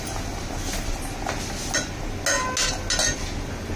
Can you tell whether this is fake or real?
real